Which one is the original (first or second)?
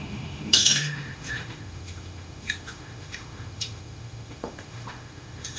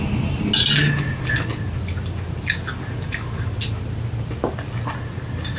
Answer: second